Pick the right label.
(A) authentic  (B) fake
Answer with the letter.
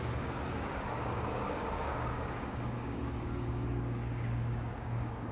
B